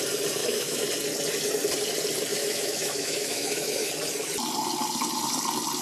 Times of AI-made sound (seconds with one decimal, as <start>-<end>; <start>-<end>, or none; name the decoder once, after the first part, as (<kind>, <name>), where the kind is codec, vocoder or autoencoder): 0.4-0.9 (autoencoder, DAC-VAE); 2.3-3.9